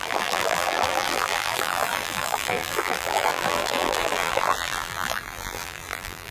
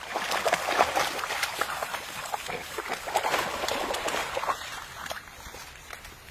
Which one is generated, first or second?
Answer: first